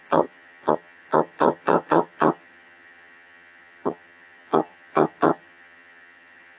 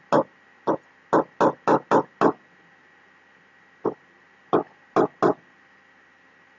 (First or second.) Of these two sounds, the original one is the second